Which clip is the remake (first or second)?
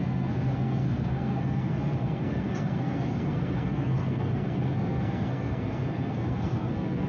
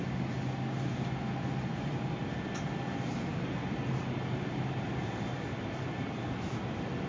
first